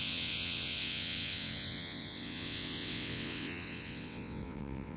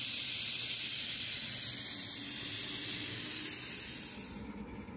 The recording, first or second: second